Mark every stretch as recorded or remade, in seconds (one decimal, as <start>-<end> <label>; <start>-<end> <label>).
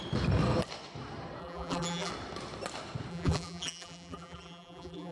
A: 0.0-1.4 recorded; 1.4-2.1 remade; 2.1-3.1 recorded; 3.1-5.1 remade